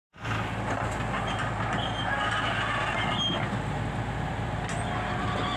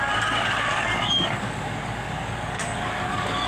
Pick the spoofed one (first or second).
second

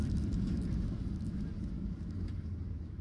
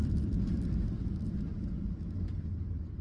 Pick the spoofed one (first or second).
first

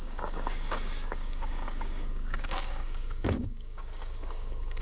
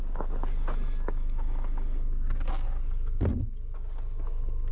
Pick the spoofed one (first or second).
first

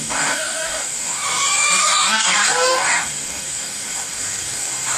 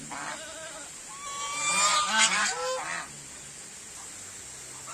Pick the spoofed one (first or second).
first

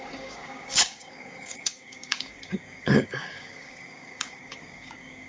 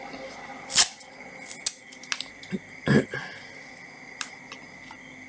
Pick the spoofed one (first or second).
first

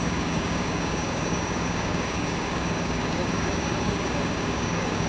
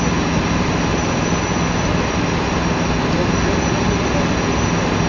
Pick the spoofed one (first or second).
first